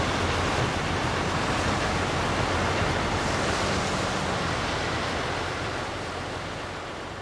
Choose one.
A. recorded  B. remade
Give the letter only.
A